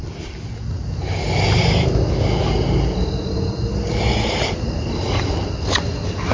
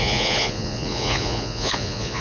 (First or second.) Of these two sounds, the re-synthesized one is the second